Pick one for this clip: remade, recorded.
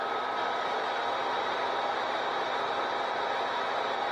recorded